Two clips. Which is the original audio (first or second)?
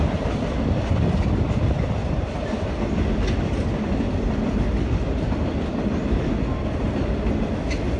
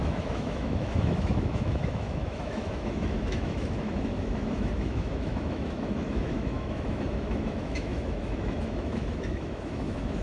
first